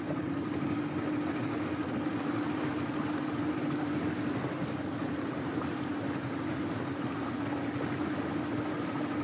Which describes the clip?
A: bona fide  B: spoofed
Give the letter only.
A